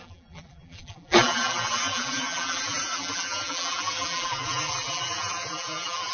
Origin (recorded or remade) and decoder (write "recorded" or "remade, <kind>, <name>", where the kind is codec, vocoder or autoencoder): remade, vocoder, BigVGAN v2